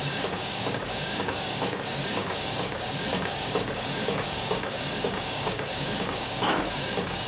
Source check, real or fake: fake